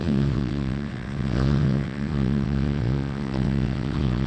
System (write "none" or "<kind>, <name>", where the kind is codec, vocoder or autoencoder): vocoder, WaveNeXt